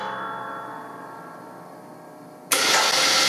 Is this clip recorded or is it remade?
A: recorded